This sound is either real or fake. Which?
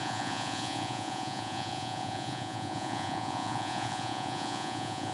fake